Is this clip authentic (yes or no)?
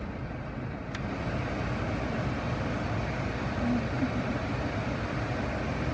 yes